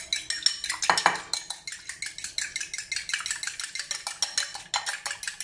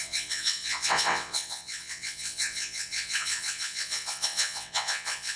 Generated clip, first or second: second